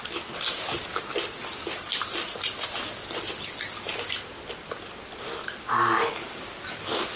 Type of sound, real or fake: real